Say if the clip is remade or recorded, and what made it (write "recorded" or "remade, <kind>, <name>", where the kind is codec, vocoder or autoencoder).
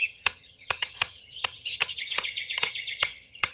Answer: remade, vocoder, HiFi-GAN